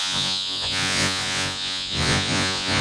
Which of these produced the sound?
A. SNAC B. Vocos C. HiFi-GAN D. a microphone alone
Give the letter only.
B